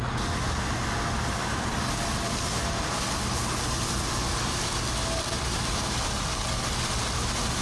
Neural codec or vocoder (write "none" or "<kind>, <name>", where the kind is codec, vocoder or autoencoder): none